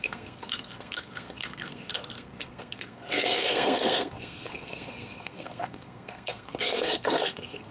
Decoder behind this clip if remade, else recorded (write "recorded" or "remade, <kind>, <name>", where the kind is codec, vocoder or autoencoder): remade, codec, SNAC